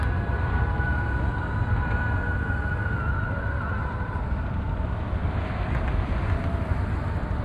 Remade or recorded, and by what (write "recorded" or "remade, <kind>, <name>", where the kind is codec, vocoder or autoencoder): recorded